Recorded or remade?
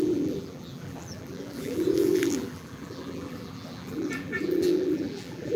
remade